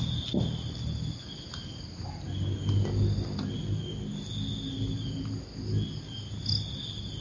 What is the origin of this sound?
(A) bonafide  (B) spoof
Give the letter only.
A